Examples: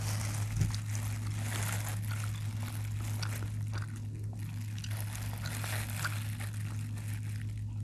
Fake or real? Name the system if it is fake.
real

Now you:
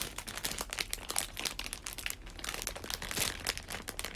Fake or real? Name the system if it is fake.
real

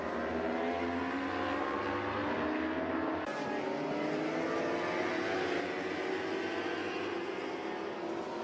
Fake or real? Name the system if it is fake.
real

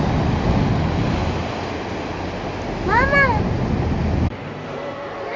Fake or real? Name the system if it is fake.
real